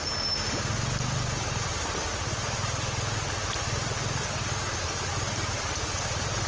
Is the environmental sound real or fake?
real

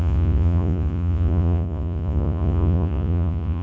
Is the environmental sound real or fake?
fake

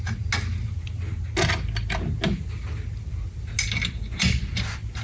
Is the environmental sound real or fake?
real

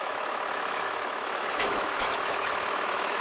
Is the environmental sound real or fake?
fake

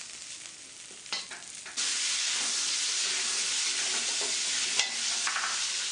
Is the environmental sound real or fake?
real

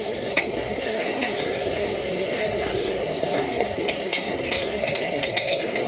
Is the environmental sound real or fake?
fake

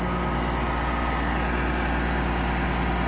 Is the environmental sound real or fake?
real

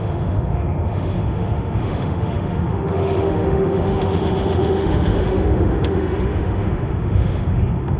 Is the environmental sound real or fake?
fake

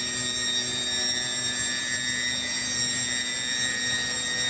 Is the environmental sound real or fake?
real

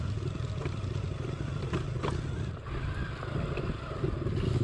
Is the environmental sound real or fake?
real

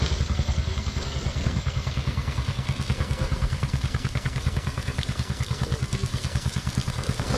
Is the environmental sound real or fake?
fake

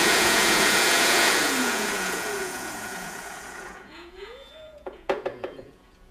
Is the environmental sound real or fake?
fake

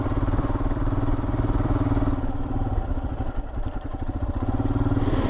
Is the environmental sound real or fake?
fake